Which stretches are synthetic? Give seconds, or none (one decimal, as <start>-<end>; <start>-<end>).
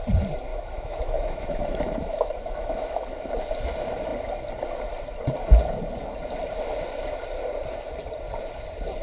0.5-3.3